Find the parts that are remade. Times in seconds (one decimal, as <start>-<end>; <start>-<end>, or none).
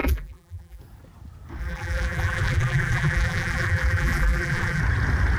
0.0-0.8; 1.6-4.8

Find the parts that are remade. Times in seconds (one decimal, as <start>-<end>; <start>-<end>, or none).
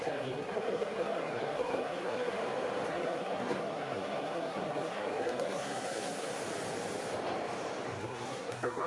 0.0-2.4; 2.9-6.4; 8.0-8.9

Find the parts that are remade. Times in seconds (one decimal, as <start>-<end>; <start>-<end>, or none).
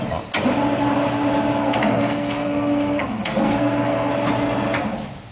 1.6-4.1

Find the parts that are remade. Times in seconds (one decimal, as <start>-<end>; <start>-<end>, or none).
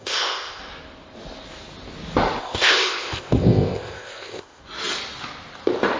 0.0-0.6; 2.4-4.6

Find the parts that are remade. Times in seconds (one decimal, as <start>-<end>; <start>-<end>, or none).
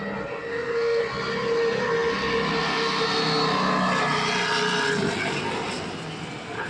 0.5-1.0